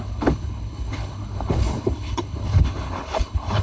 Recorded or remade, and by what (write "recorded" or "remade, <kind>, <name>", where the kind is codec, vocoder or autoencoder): remade, codec, HILCodec